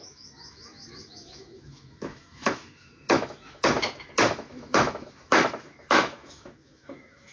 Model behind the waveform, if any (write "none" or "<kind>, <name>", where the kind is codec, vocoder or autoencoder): autoencoder, DAC-VAE